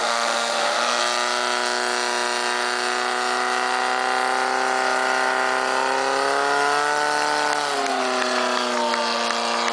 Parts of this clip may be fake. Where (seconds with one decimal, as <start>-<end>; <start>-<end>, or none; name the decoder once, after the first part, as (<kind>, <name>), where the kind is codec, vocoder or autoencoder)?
0.0-1.0 (autoencoder, DAC-VAE)